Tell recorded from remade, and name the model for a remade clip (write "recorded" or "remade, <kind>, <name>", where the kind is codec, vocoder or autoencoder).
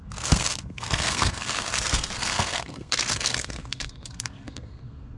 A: remade, codec, SNAC